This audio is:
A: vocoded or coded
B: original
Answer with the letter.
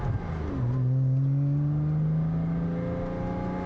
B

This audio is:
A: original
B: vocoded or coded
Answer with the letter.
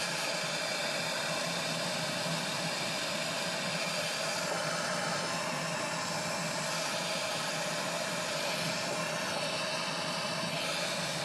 A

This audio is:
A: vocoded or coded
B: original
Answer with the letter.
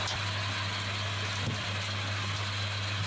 B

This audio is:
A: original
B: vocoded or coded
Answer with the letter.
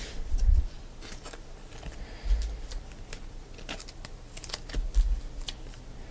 A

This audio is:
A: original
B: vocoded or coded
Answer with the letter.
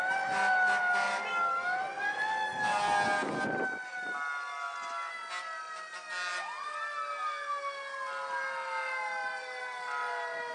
A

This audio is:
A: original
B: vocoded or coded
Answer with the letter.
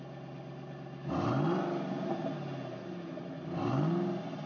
A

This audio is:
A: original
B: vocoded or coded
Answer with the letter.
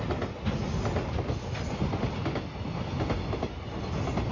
A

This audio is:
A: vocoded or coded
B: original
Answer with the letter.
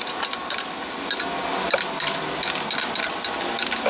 B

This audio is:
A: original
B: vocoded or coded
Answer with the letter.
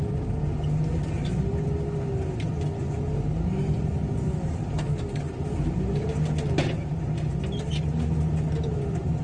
A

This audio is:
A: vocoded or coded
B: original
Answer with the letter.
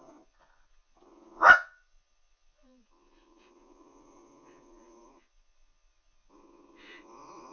A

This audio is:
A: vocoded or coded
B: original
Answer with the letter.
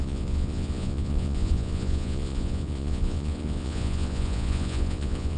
A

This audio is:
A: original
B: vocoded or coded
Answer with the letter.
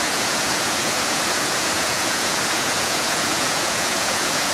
B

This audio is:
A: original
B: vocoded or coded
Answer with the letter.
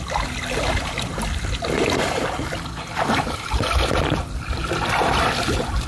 A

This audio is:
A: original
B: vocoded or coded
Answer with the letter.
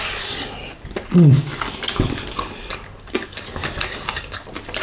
A